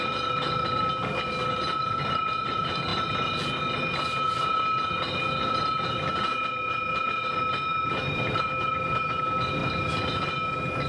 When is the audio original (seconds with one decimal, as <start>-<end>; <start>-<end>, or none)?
0.0-7.7; 9.1-10.9